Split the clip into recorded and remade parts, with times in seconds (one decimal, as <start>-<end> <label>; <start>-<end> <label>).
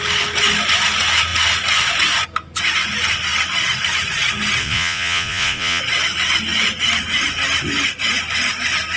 0.0-4.6 recorded; 4.6-5.8 remade; 5.8-9.0 recorded